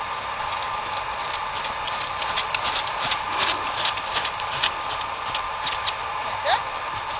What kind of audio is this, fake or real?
real